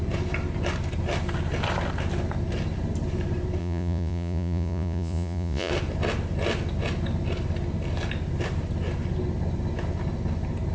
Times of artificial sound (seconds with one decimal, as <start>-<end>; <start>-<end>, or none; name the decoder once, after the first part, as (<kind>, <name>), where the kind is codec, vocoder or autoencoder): 3.6-5.7 (vocoder, Vocos)